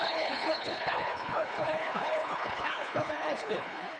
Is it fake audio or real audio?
fake